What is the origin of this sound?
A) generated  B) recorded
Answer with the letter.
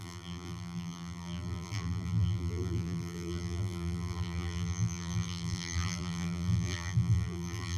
A